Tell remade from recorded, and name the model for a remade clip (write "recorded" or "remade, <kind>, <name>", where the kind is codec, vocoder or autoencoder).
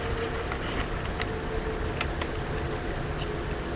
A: recorded